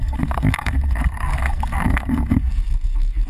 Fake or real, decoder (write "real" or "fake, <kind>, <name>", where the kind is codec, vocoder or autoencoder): fake, codec, SNAC